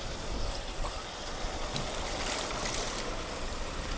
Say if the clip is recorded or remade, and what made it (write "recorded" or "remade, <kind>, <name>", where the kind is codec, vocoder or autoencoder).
remade, vocoder, BigVGAN v2